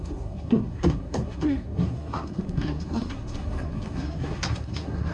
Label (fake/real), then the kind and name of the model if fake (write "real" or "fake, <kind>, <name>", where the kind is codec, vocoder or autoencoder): fake, codec, SNAC